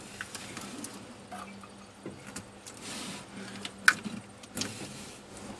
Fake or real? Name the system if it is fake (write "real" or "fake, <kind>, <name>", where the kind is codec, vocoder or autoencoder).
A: real